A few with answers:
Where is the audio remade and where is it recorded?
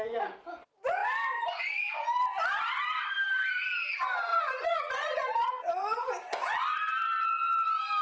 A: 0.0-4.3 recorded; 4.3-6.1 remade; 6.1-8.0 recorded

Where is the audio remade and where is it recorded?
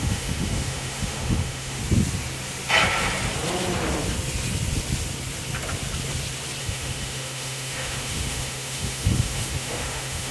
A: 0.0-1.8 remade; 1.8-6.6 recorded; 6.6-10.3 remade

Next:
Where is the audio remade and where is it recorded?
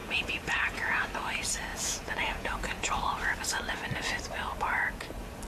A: 0.0-1.1 remade; 1.1-1.7 recorded; 1.7-2.9 remade; 2.9-5.5 recorded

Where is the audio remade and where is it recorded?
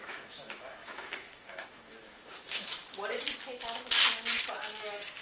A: 0.0-2.8 remade; 2.8-4.5 recorded; 4.5-5.2 remade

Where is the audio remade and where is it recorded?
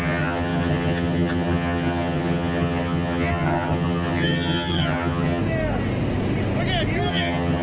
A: 0.0-5.4 remade; 5.4-7.1 recorded; 7.1-7.6 remade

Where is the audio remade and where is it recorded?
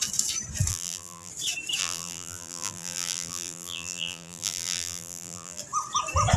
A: 0.0-0.7 recorded; 0.7-1.3 remade; 1.3-1.8 recorded; 1.8-5.6 remade; 5.6-6.4 recorded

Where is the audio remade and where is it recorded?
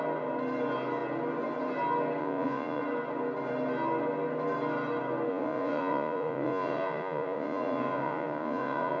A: 0.0-2.2 recorded; 2.2-2.8 remade; 2.8-5.3 recorded; 5.3-9.0 remade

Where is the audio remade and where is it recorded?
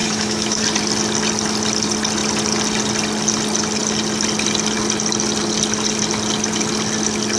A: 0.0-0.6 remade; 0.6-7.4 recorded